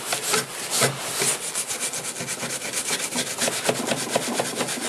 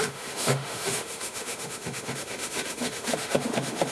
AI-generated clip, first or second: second